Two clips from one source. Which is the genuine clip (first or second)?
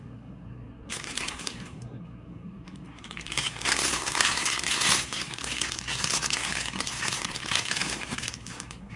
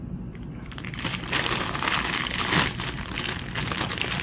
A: second